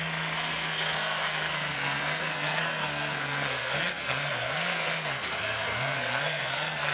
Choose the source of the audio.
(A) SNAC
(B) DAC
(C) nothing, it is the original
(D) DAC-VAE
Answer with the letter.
A